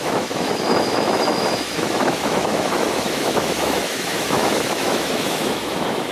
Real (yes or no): no